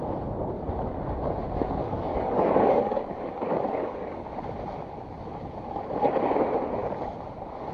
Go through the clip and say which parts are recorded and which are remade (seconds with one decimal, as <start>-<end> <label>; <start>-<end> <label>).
0.0-1.8 recorded; 1.8-4.3 remade; 4.3-7.7 recorded